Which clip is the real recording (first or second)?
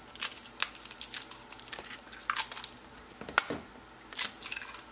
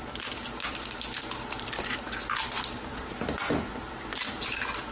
first